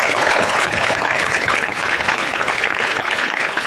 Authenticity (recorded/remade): remade